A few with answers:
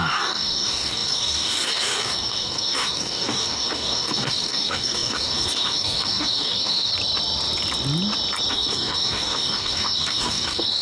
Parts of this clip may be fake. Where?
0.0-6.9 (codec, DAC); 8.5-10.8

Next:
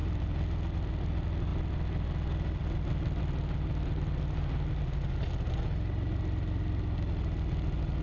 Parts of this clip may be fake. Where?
none

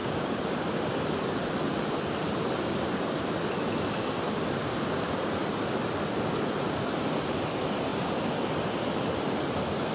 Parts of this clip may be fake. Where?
0.0-0.7 (codec, DAC)

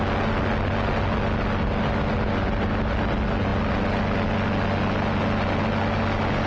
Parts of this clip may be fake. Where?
none

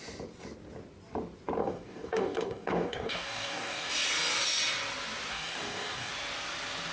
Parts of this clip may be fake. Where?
1.6-3.9 (codec, DAC); 5.3-6.1